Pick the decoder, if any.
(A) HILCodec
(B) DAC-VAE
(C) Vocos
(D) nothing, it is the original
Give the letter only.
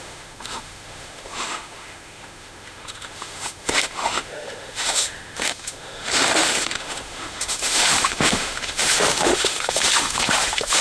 B